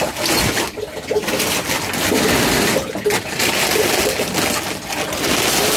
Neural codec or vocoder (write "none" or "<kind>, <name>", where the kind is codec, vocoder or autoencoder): none